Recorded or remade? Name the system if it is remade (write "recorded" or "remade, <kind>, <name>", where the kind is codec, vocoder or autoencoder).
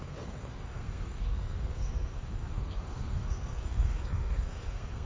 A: remade, codec, SNAC